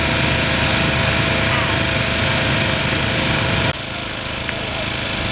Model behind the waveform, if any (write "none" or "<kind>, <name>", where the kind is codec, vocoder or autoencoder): none